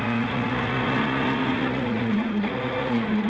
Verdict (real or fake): fake